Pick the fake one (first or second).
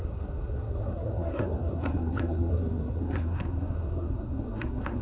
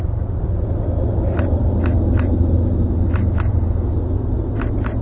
first